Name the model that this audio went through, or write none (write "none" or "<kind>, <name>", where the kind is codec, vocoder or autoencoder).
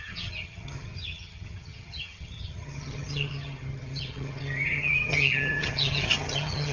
vocoder, HiFi-GAN